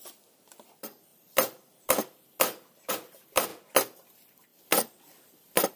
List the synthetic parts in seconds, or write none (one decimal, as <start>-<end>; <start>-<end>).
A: 0.0-3.5; 4.1-5.8